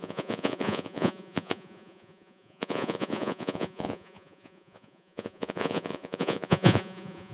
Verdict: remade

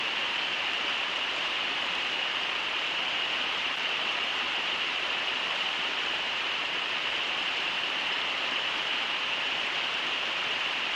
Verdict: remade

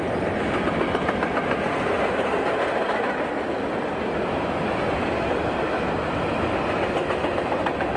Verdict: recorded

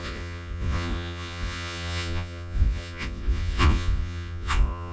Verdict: remade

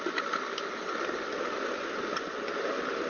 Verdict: recorded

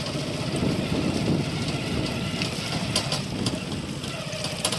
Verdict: recorded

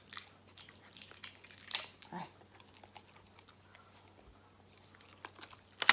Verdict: recorded